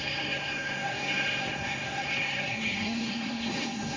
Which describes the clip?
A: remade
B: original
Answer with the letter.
A